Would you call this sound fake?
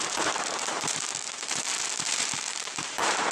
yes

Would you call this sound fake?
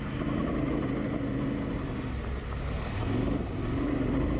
no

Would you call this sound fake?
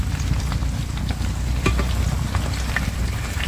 yes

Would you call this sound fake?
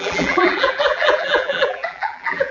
yes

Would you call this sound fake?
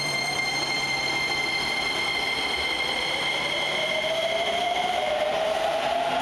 yes